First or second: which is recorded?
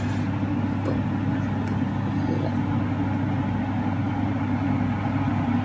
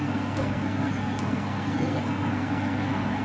first